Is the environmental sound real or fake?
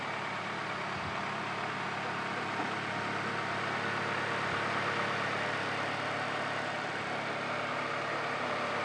real